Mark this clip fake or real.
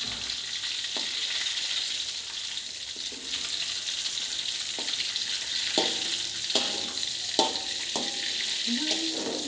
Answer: real